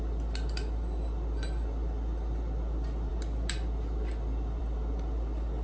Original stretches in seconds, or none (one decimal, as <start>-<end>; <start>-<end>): 0.0-5.6